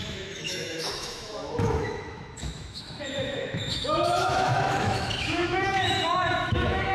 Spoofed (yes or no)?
yes